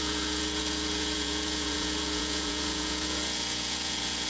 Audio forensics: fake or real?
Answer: fake